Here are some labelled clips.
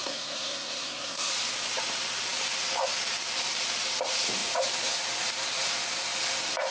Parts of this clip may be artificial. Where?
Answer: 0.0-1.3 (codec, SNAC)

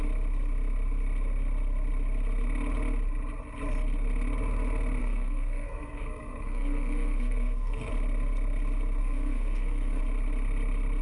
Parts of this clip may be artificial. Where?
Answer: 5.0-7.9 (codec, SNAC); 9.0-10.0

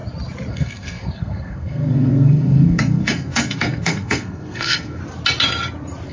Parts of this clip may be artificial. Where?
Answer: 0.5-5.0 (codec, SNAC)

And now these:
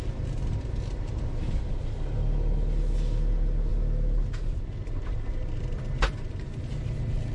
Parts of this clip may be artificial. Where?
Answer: none

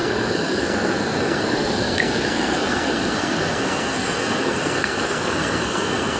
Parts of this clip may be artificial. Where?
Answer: 0.0-6.2 (codec, SNAC)